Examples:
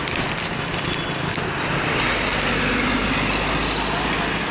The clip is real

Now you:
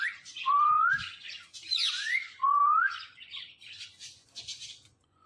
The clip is fake